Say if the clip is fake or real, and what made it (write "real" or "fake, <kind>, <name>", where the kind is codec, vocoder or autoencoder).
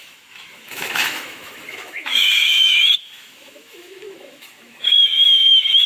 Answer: fake, autoencoder, DAC-VAE